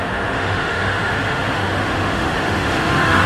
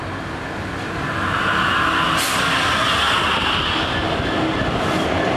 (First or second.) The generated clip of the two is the first